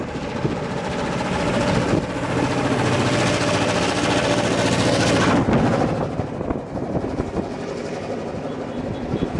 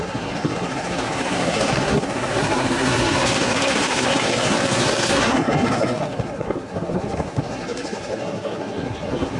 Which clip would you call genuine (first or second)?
first